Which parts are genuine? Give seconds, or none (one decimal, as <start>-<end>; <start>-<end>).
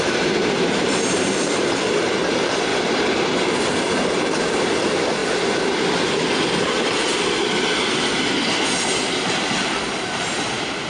2.7-4.4; 5.2-8.3